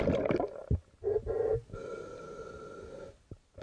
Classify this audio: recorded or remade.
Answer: recorded